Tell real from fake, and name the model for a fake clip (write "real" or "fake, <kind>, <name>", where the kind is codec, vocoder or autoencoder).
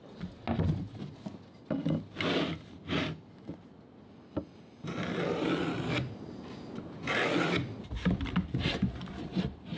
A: real